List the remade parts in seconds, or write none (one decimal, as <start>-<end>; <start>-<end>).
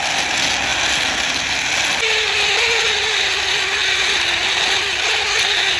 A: none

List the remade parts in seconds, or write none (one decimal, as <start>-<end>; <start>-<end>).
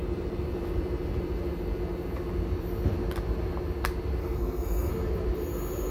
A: 4.2-4.9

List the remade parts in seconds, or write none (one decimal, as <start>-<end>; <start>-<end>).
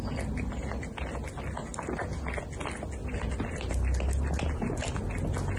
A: none